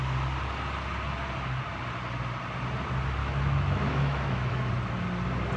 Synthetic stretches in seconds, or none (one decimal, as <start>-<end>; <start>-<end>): 3.2-4.7